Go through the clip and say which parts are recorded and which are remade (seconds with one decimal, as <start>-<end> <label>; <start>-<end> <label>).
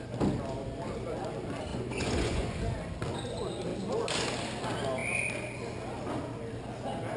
0.0-1.7 recorded; 1.7-2.6 remade; 2.6-7.2 recorded